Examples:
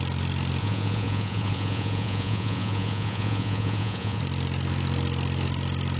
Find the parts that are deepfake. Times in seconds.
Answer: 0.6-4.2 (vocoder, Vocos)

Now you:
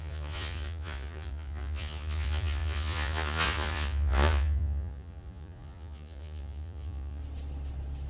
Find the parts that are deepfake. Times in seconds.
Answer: 0.0-7.2 (vocoder, Vocos)